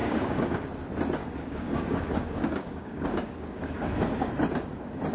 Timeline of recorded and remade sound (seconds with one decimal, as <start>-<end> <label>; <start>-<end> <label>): 0.0-0.7 remade; 0.7-1.2 recorded; 1.2-4.3 remade; 4.3-5.1 recorded